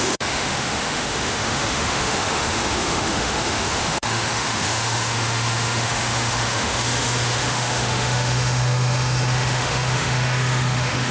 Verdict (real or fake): fake